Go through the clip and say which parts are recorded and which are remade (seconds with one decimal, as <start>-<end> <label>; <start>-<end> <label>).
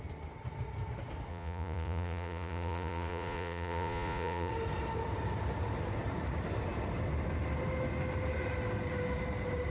0.0-1.3 recorded; 1.3-4.5 remade; 4.5-9.7 recorded